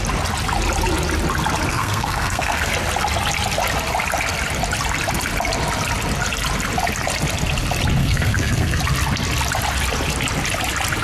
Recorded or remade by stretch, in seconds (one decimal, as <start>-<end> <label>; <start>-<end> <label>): 0.0-1.7 recorded; 1.7-2.7 remade; 2.7-8.0 recorded; 8.0-8.8 remade; 8.8-11.0 recorded